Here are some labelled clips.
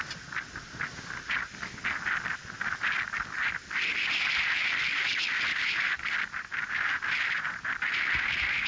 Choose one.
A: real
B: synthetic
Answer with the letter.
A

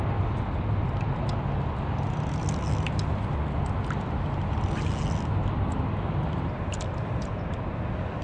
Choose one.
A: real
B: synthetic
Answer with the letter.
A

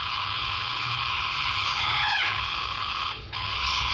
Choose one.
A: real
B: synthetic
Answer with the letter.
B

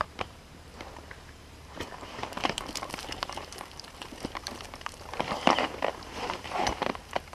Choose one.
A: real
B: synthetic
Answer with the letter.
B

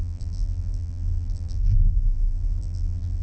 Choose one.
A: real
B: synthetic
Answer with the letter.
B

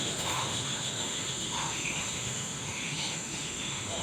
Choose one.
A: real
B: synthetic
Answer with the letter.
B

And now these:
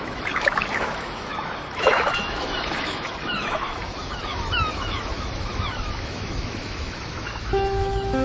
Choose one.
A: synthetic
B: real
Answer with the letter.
A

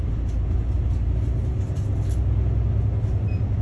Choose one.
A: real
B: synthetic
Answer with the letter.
A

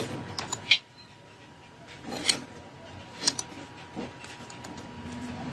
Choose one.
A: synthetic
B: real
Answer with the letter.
B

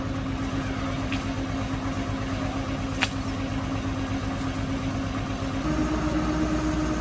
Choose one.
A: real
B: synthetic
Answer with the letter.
A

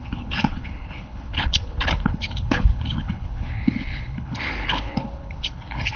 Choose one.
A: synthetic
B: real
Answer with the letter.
A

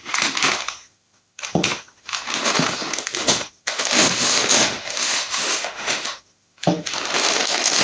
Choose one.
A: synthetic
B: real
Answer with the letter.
A